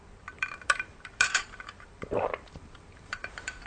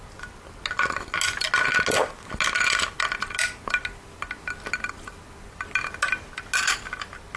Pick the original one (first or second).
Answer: second